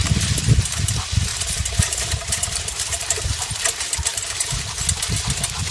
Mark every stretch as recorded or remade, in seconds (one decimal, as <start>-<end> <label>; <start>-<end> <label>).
0.0-1.3 recorded; 1.3-3.2 remade; 3.2-4.1 recorded; 4.1-4.6 remade; 4.6-5.7 recorded